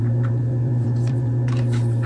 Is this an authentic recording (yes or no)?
no